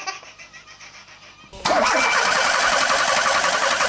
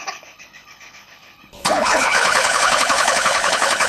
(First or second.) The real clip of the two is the first